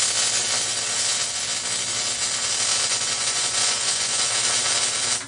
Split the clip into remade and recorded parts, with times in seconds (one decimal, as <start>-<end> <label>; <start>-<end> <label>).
0.0-2.9 recorded; 2.9-4.3 remade; 4.3-5.3 recorded